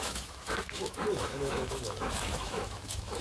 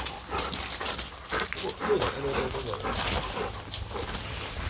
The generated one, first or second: first